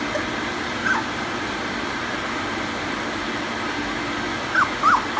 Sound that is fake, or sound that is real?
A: real